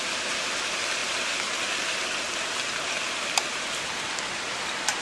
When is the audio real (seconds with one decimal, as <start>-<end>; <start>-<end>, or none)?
0.0-5.0

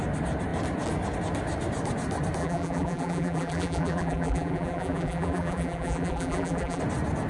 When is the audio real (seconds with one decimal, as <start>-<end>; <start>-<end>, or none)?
0.0-2.4; 6.8-7.3